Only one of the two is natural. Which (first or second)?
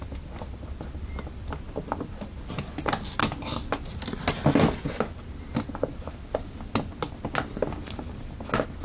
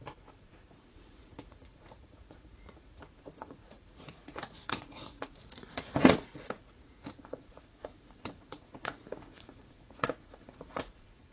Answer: first